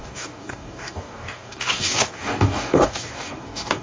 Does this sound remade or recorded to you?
remade